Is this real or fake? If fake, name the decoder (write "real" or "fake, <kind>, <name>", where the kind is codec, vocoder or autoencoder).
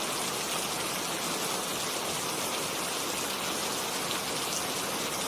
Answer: real